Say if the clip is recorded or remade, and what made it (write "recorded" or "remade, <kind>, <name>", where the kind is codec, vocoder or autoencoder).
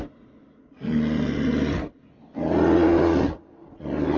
recorded